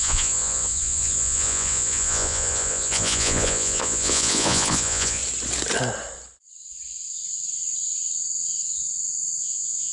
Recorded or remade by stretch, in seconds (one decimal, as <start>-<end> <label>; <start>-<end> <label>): 0.0-5.2 remade; 5.2-9.4 recorded; 9.4-9.9 remade